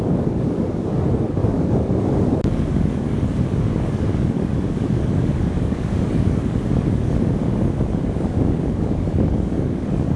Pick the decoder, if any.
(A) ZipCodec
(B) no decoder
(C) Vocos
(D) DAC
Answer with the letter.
D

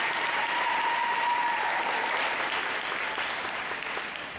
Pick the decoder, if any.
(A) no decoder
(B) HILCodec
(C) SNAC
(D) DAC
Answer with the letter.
A